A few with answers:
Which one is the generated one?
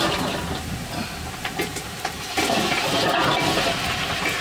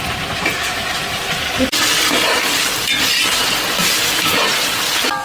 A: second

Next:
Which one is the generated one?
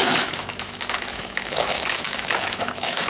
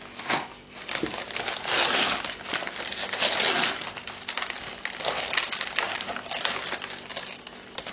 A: first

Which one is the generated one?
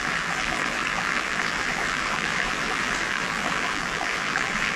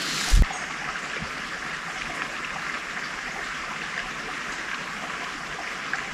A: first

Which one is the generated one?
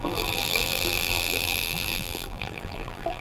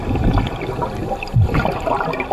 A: first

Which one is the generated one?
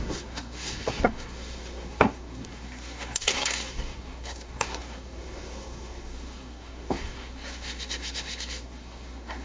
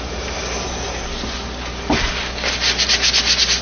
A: first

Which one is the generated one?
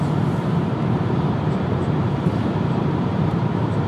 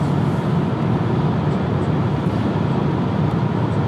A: first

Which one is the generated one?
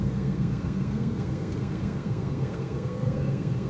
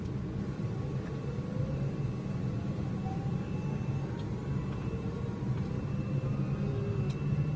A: first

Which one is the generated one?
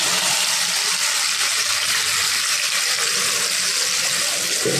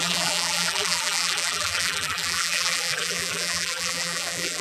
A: second